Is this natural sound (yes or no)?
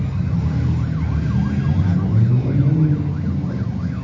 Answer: yes